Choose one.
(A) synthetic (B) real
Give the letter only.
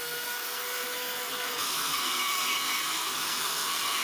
A